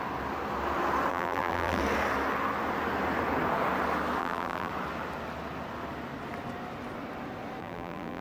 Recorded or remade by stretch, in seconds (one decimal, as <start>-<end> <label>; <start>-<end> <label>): 0.0-1.1 recorded; 1.1-1.8 remade; 1.8-4.2 recorded; 4.2-4.7 remade; 4.7-7.6 recorded; 7.6-8.2 remade